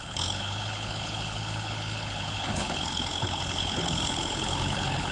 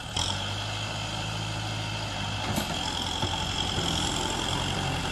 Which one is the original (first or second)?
second